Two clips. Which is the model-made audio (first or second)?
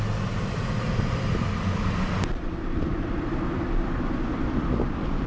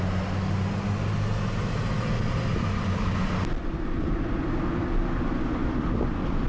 first